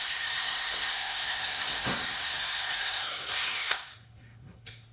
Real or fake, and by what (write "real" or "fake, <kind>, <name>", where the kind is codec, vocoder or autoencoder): fake, codec, SNAC